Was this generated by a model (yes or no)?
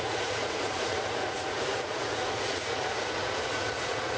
yes